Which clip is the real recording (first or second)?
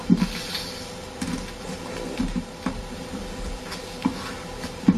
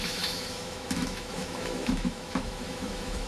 first